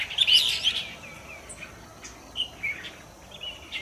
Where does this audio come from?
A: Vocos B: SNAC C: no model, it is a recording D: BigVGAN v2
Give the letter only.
C